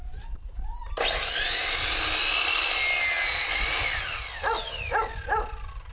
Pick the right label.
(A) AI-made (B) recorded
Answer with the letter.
B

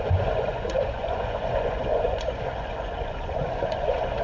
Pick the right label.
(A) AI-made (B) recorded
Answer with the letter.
A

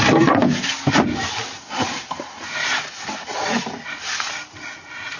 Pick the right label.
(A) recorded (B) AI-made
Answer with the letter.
A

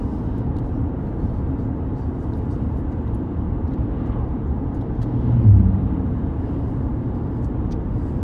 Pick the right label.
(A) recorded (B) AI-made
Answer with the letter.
B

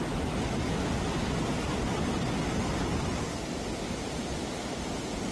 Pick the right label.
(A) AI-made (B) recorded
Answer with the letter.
B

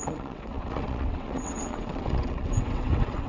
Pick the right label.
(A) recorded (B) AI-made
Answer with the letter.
B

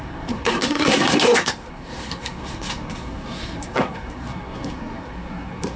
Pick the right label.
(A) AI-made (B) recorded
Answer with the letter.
A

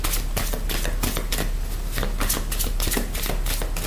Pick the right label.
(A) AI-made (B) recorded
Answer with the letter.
B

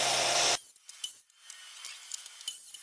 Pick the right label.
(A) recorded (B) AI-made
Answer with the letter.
A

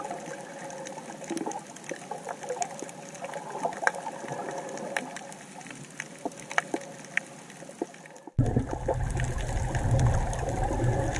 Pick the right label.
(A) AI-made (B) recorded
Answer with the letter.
B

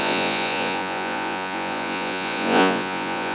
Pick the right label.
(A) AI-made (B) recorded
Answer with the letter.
A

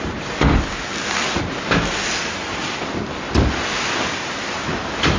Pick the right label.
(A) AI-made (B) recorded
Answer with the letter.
A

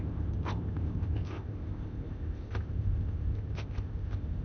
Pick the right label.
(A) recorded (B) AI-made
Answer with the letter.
B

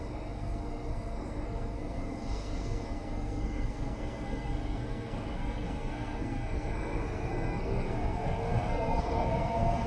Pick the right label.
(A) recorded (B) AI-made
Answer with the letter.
B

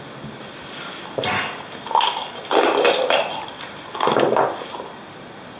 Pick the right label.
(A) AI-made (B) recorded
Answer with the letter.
A